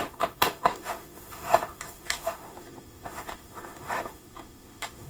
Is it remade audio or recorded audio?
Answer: remade